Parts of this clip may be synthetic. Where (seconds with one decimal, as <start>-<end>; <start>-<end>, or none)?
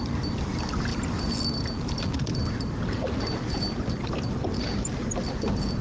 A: none